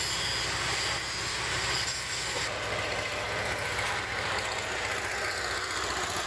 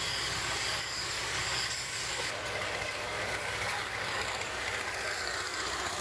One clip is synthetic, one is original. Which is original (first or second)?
first